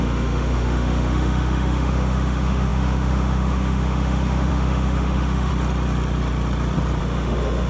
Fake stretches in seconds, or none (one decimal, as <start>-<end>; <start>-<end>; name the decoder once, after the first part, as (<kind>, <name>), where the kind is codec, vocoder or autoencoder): 0.0-5.5 (autoencoder, DAC-VAE); 7.0-7.7